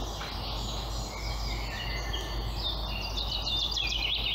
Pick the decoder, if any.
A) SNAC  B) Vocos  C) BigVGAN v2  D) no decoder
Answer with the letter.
D